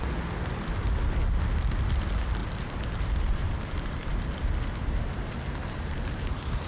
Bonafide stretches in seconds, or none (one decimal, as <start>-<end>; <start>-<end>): 0.0-2.4